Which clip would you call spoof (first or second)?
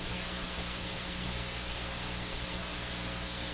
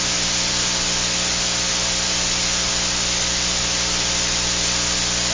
first